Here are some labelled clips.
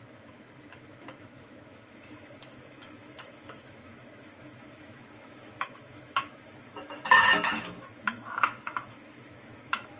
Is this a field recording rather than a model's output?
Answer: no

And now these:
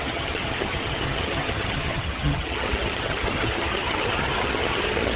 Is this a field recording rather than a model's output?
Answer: no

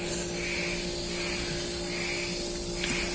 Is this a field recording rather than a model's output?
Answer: yes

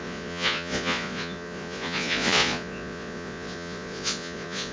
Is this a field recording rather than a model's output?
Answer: no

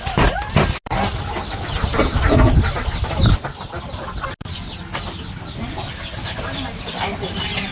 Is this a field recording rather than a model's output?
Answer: yes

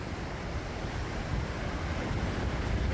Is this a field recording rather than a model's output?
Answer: yes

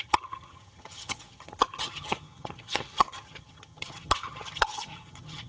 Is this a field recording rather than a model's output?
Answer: no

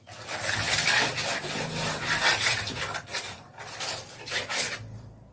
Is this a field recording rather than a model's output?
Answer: yes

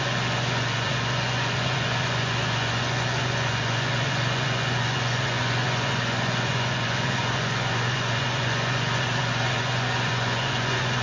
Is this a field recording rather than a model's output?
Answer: no